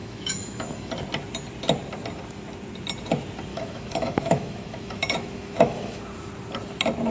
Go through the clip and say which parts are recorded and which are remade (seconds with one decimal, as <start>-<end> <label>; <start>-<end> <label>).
0.0-0.9 remade; 0.9-3.5 recorded; 3.5-6.0 remade; 6.0-7.1 recorded